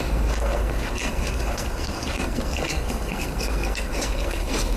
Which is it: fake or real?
fake